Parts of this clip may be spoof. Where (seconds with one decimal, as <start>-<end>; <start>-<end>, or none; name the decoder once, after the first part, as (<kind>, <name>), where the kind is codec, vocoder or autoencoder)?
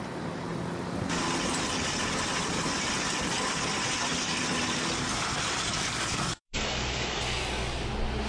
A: 5.7-7.9 (codec, DAC)